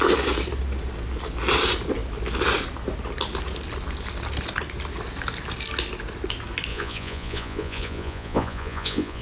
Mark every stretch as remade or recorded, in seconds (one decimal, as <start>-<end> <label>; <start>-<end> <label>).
0.0-6.7 recorded; 6.7-9.2 remade